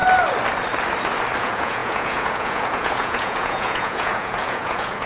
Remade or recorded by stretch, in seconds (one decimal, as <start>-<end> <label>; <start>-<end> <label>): 0.0-1.4 recorded; 1.4-5.1 remade